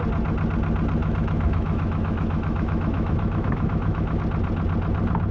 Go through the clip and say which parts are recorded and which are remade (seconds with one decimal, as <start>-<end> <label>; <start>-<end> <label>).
0.0-1.0 recorded; 1.0-4.2 remade; 4.2-5.3 recorded